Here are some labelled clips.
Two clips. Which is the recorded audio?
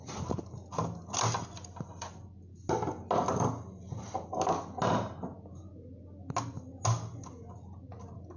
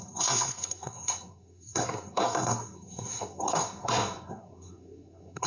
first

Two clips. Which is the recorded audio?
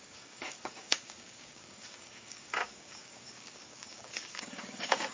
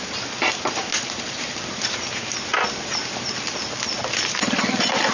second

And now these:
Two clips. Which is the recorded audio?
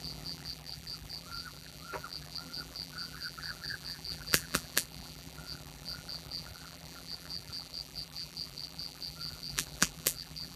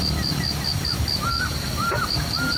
second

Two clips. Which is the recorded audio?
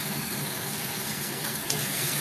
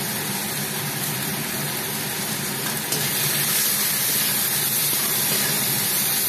second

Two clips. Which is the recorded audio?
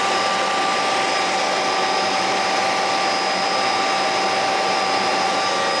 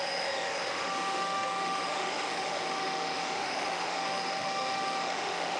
first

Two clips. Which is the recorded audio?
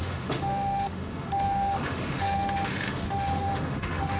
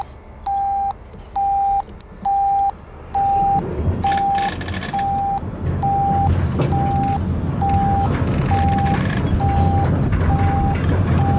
second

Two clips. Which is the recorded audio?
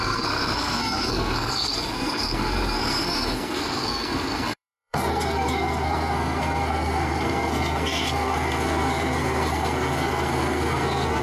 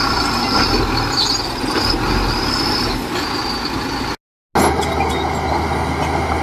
second